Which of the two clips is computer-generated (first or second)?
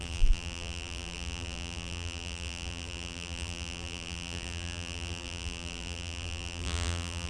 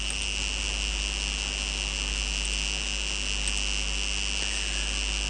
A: first